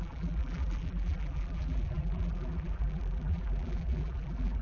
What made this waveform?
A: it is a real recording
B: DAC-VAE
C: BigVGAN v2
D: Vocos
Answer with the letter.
C